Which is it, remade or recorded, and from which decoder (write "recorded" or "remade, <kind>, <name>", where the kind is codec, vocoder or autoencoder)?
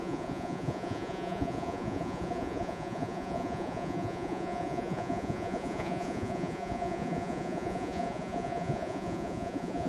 remade, vocoder, Vocos